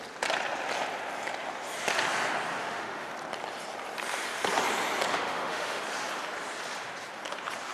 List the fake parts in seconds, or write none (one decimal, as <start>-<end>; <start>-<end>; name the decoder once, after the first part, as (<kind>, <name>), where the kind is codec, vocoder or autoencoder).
2.6-3.1 (autoencoder, DAC-VAE); 5.1-5.8